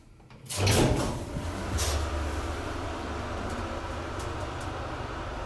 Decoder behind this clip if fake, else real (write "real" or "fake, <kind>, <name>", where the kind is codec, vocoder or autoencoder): fake, vocoder, BigVGAN v2